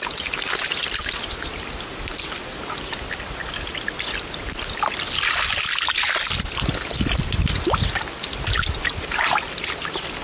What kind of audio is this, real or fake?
real